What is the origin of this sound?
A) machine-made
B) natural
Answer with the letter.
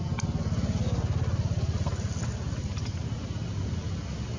B